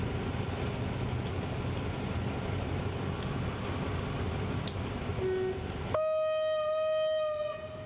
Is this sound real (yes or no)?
yes